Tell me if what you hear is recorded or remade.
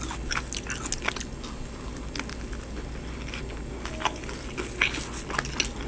recorded